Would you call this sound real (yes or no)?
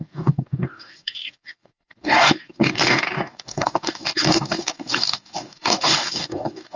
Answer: no